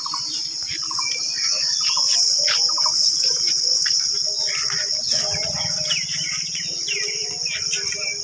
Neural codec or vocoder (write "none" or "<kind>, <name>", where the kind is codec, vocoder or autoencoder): none